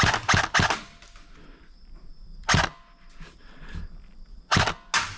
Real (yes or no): yes